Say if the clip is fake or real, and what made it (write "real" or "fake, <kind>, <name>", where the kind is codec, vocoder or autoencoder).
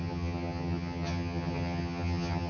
fake, vocoder, HiFi-GAN